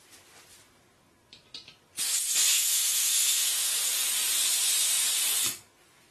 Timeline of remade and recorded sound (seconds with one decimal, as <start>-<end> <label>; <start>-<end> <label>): 0.0-2.5 recorded; 2.5-3.7 remade; 3.7-6.1 recorded